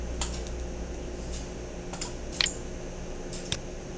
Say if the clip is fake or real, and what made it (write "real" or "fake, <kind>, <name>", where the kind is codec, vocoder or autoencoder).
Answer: real